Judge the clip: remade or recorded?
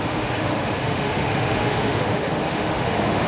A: remade